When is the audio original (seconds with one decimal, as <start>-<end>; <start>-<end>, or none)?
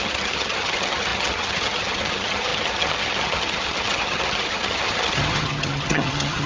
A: none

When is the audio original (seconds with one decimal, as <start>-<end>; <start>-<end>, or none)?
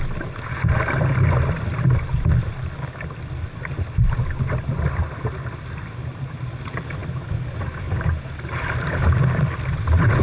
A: 0.0-10.2